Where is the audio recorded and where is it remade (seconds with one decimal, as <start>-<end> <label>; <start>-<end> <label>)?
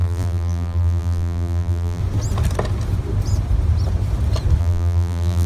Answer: 0.0-2.0 remade; 2.0-4.6 recorded; 4.6-5.5 remade